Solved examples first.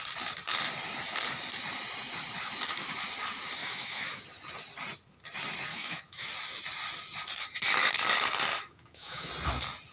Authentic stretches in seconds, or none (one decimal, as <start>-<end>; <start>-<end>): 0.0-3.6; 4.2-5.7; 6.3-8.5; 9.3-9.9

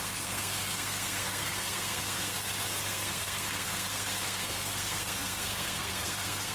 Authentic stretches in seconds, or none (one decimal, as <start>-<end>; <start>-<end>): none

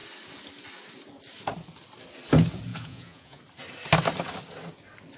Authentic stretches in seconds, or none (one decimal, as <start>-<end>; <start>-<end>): 0.0-2.7; 3.4-5.2

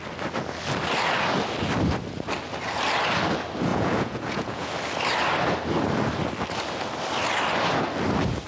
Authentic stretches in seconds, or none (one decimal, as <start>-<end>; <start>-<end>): 0.0-3.7; 4.7-8.5

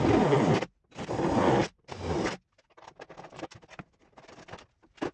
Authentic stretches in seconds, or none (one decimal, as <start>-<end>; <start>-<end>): 0.0-5.1

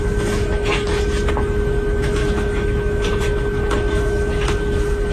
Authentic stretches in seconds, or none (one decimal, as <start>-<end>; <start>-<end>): none